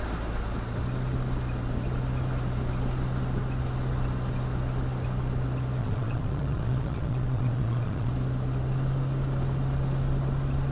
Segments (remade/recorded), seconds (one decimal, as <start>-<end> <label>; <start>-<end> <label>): 0.0-5.8 recorded; 5.8-8.1 remade; 8.1-10.7 recorded